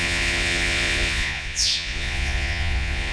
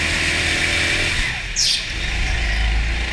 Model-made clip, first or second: first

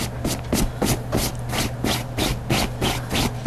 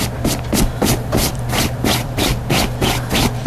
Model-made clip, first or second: second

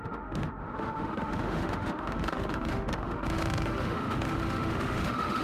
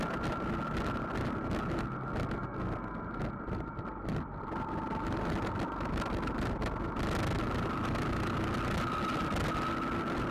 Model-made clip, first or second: first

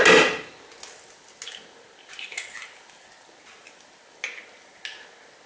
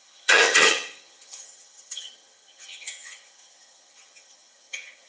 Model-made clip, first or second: second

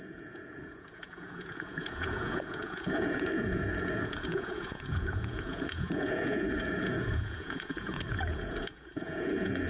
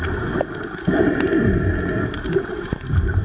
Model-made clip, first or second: first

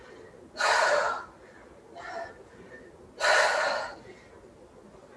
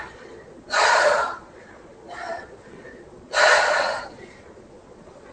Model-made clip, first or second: second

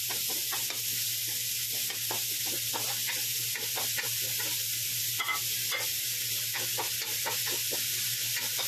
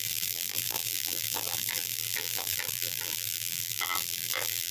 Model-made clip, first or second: second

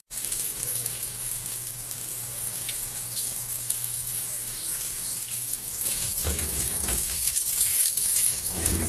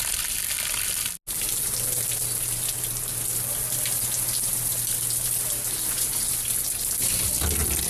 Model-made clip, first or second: first